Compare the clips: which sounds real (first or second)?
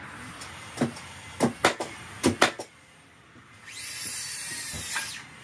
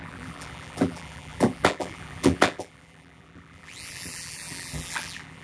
first